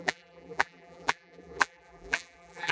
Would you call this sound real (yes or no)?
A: no